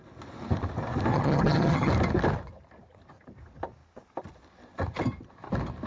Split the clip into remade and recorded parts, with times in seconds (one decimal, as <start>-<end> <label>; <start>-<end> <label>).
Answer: 0.0-1.1 recorded; 1.1-1.9 remade; 1.9-5.9 recorded